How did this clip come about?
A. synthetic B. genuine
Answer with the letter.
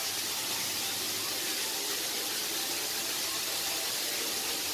B